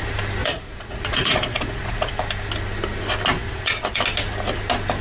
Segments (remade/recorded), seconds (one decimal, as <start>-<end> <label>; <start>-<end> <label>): 0.0-0.4 recorded; 0.4-2.1 remade; 2.1-3.4 recorded; 3.4-4.0 remade; 4.0-5.0 recorded